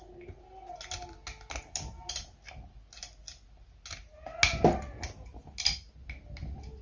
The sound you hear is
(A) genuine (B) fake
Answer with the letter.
A